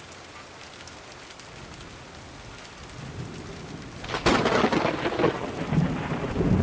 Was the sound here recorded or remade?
recorded